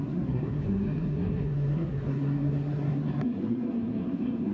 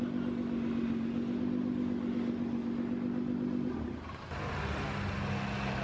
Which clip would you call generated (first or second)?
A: first